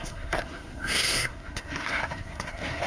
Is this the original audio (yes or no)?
no